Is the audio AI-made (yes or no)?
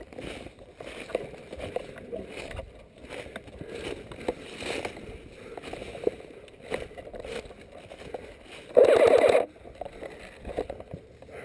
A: no